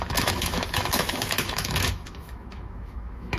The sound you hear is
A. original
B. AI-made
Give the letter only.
B